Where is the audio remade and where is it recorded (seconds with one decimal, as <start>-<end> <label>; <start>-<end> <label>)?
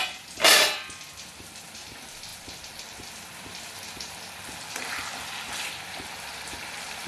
0.0-7.1 remade